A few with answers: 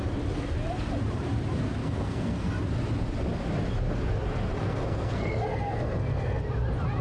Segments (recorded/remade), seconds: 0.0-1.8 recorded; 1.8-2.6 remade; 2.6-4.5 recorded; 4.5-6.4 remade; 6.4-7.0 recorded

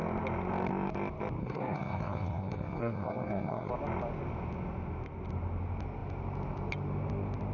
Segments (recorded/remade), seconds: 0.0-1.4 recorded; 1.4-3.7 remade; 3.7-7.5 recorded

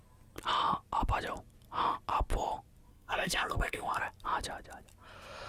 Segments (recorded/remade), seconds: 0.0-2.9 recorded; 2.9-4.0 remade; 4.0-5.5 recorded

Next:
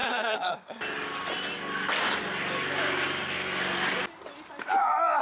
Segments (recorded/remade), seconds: 0.0-0.7 remade; 0.7-5.2 recorded

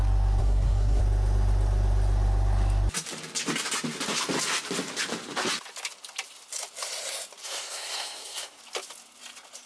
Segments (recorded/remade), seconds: 0.0-0.4 recorded; 0.4-1.0 remade; 1.0-7.4 recorded; 7.4-8.6 remade; 8.6-9.7 recorded

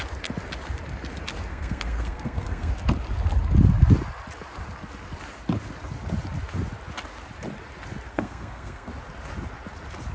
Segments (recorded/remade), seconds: 0.0-1.5 recorded; 1.5-2.7 remade; 2.7-8.1 recorded; 8.1-8.9 remade; 8.9-10.1 recorded